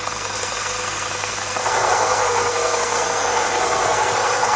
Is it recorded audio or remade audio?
remade